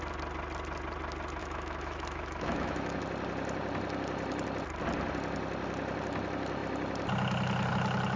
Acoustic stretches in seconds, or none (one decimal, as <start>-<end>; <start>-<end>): 0.0-1.4; 3.0-8.2

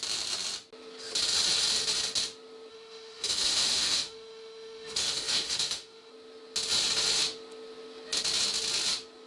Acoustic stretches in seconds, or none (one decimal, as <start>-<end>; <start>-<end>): 0.0-2.7; 6.1-9.3

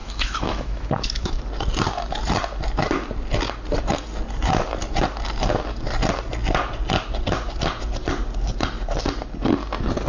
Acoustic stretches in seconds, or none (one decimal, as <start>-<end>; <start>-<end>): 1.4-10.1

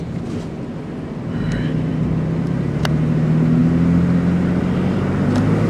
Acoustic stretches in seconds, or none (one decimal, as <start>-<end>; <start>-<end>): 0.0-5.7

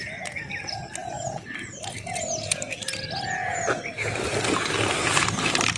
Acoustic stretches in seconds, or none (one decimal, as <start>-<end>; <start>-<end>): 0.0-5.8

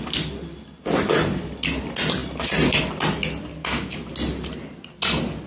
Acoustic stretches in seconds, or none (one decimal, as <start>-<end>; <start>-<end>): 0.0-3.6; 4.1-5.5

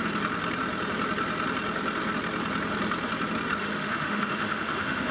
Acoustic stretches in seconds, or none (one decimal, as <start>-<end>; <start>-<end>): 0.0-3.6